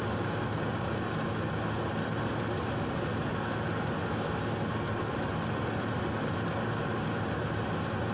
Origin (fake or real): real